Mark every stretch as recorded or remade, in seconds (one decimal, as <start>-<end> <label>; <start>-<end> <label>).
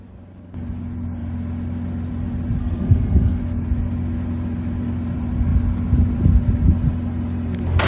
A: 0.0-2.6 recorded; 2.6-3.4 remade; 3.4-7.9 recorded